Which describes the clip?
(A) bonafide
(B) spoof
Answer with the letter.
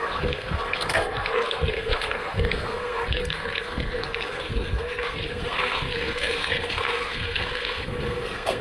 B